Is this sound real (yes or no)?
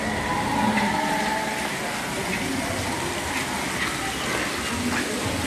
yes